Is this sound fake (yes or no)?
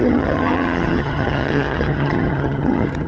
yes